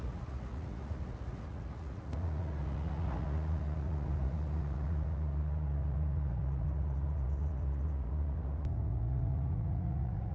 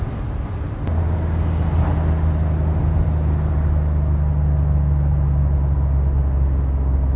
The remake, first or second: first